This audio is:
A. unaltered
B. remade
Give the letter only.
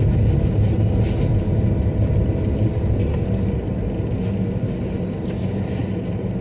A